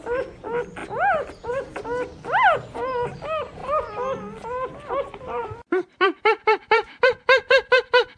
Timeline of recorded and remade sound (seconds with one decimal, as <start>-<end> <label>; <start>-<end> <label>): 0.0-3.6 recorded; 3.6-8.2 remade